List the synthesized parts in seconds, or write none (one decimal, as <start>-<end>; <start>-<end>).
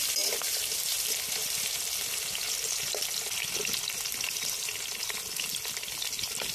none